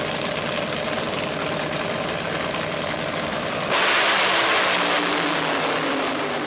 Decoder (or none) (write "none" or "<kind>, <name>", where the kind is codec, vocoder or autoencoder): none